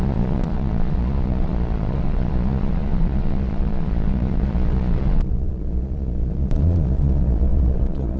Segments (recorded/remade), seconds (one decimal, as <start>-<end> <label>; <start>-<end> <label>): 0.0-8.2 remade